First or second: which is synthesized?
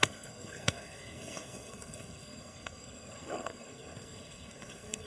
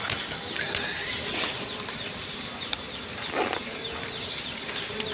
first